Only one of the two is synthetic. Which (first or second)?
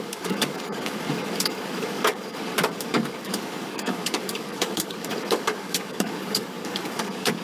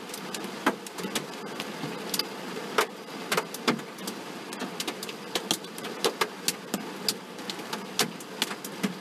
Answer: first